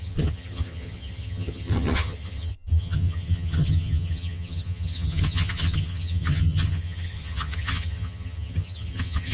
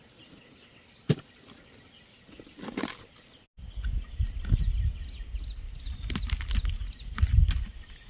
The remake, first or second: first